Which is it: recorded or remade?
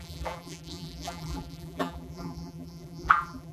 remade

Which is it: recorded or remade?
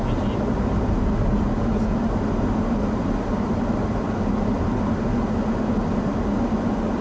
recorded